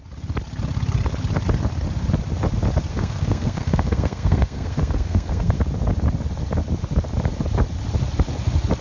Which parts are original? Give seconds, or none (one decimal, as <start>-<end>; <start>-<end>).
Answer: 0.0-2.9; 5.6-8.8